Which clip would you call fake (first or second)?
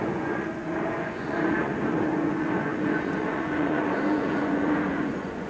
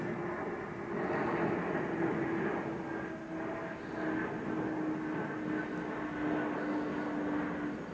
first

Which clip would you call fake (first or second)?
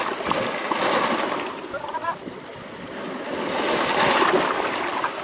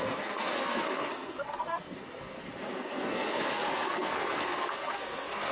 second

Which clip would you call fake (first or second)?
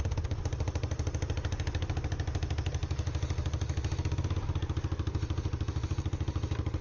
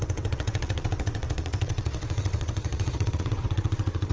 second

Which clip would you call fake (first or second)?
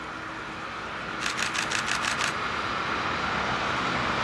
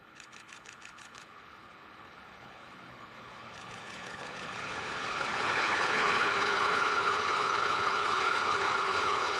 second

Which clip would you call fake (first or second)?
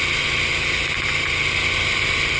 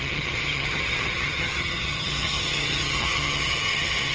second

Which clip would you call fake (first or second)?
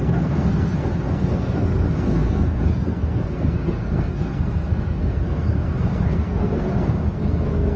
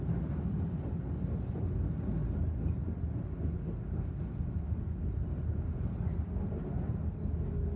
first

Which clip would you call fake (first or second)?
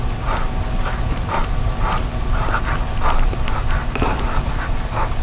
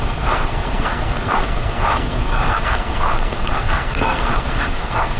second